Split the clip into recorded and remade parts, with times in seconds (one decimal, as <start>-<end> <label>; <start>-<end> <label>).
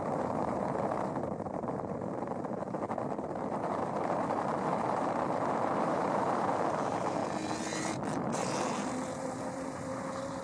0.0-7.2 remade; 7.2-8.2 recorded; 8.2-10.4 remade